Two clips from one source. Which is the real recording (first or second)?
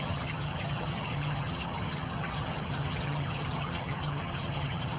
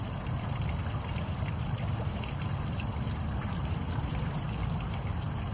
second